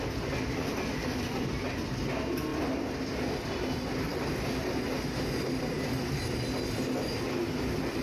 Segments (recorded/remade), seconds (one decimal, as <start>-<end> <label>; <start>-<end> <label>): 0.0-8.0 recorded